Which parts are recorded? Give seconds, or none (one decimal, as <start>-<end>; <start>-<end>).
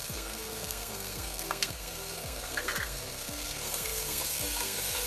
none